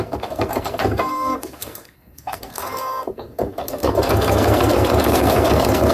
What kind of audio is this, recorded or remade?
remade